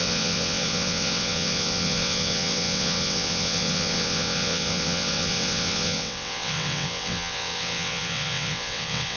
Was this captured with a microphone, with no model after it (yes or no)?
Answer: no